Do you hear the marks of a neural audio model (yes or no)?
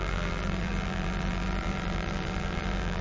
yes